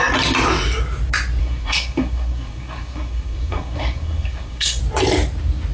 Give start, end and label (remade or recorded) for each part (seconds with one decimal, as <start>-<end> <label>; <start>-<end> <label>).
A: 0.0-1.4 recorded; 1.4-4.8 remade; 4.8-5.7 recorded